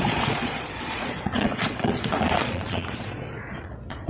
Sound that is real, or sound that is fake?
fake